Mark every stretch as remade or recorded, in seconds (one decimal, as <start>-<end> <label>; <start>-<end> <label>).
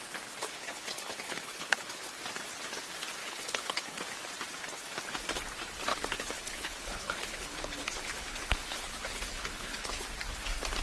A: 0.0-0.4 recorded; 0.4-2.2 remade; 2.2-3.2 recorded; 3.2-4.0 remade; 4.0-5.9 recorded; 5.9-10.0 remade; 10.0-10.8 recorded